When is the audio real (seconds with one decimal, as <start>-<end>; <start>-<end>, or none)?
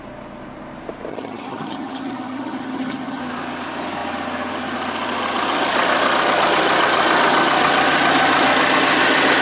0.0-1.1; 3.2-9.4